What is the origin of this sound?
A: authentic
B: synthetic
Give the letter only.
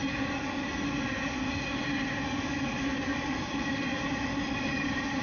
A